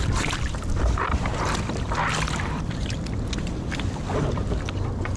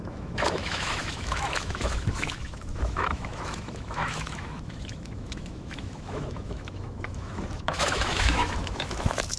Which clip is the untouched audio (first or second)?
first